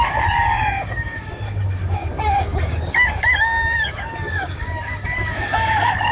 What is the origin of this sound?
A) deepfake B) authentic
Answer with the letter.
A